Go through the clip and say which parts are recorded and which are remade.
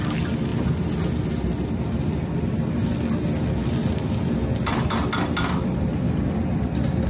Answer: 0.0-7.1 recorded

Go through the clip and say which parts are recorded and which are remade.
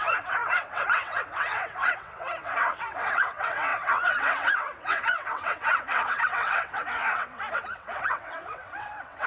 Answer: 0.0-9.3 remade